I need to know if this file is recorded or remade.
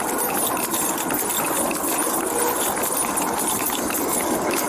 recorded